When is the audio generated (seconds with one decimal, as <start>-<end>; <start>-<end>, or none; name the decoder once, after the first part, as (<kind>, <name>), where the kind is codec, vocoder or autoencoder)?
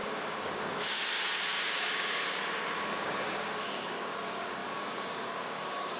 0.0-6.0 (codec, DAC)